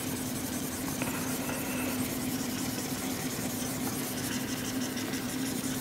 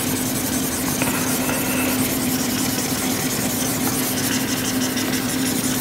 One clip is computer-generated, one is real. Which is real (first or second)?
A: second